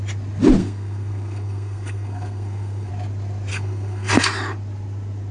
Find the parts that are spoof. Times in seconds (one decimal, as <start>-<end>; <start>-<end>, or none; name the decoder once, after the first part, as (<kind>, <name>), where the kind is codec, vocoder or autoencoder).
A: 0.6-2.9 (codec, SNAC); 3.5-4.1

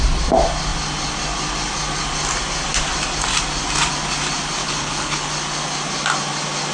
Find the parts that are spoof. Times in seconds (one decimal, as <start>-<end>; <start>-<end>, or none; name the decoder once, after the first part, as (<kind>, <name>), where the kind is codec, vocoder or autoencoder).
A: 4.6-5.3 (codec, HILCodec)